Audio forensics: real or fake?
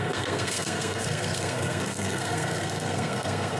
fake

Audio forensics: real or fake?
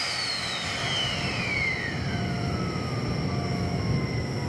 real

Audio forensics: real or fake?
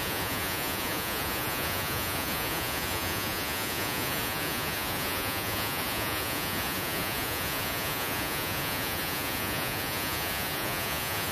fake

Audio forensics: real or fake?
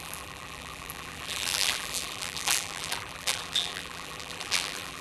fake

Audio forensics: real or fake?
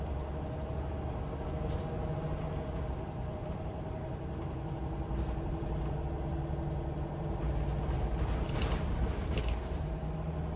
real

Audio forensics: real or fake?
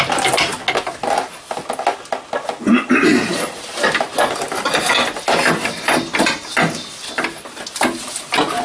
real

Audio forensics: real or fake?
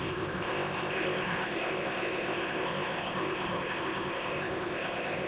fake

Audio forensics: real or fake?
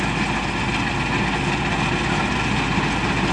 real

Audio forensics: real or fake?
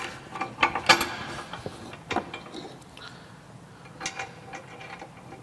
real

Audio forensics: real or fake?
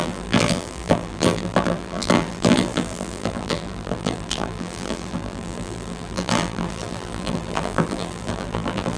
fake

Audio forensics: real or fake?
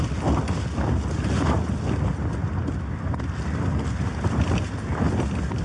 real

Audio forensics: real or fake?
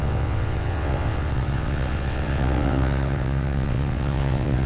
fake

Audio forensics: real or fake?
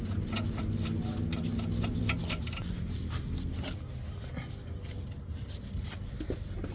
real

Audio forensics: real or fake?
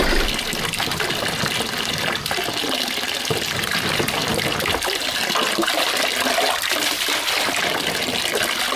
real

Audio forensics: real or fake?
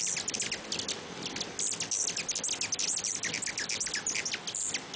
real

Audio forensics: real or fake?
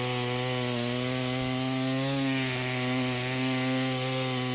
real